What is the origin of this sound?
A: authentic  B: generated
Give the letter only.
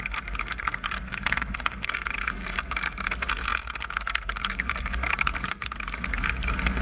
B